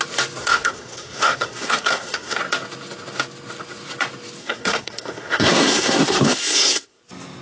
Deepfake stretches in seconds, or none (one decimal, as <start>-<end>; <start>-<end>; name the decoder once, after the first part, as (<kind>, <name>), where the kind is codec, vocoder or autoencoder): 0.4-2.4 (codec, SNAC); 4.4-7.0